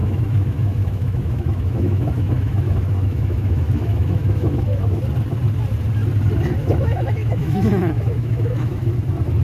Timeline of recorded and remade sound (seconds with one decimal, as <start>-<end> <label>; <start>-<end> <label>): 0.0-5.0 remade; 5.0-6.6 recorded; 6.6-8.9 remade; 8.9-9.4 recorded